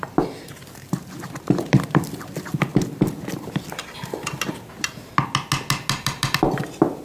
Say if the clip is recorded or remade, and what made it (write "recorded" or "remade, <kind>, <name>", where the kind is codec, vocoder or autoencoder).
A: recorded